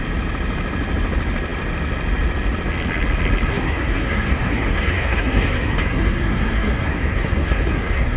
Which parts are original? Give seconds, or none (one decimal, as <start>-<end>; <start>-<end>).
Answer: 0.0-3.5